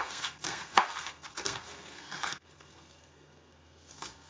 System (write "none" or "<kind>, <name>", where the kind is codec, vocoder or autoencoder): codec, SNAC